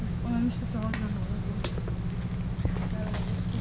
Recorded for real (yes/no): yes